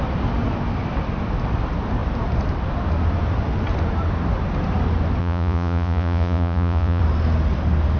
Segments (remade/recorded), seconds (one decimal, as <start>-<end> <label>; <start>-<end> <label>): 0.0-5.2 recorded; 5.2-7.0 remade; 7.0-8.0 recorded